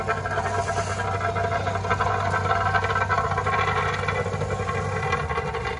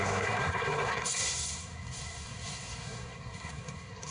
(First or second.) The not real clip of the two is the second